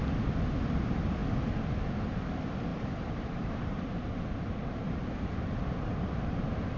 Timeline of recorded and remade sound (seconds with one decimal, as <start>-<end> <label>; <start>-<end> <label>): 0.0-2.7 recorded; 2.7-6.8 remade